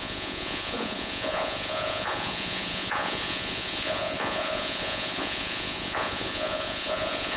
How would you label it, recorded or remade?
remade